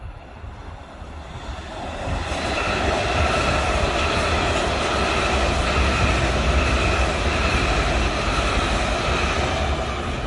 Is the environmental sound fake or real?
real